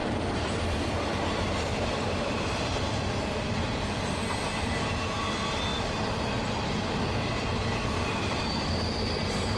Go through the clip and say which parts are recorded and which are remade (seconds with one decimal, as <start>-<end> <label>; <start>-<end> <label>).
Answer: 0.0-0.6 remade; 0.6-1.7 recorded; 1.7-3.1 remade; 3.1-9.6 recorded